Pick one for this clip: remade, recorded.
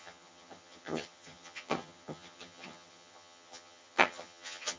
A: remade